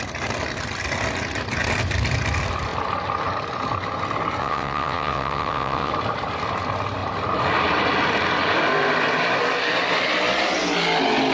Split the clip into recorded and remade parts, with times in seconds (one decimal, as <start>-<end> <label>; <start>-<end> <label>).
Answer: 0.0-4.4 recorded; 4.4-5.9 remade; 5.9-11.3 recorded